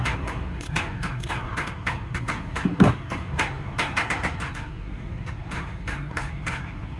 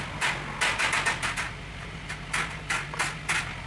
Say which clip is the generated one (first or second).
first